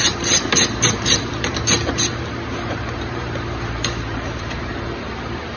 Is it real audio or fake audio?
fake